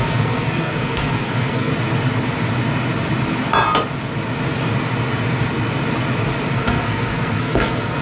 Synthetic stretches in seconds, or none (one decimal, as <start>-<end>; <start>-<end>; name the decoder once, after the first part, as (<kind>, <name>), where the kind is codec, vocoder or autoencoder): 0.0-1.7 (codec, SNAC); 6.5-8.0